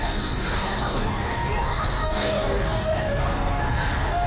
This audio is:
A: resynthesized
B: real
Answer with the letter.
A